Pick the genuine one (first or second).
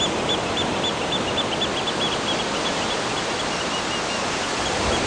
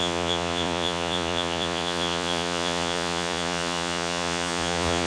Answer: first